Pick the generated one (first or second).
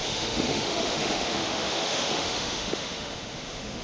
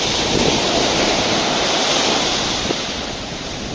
first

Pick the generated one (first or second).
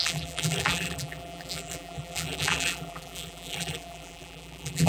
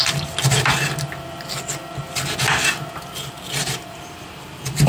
first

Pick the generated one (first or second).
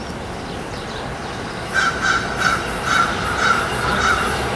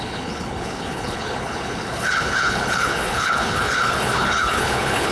second